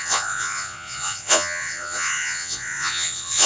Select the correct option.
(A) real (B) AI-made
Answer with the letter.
B